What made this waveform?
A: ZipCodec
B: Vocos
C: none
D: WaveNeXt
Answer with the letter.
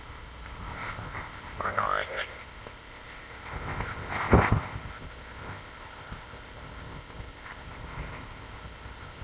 A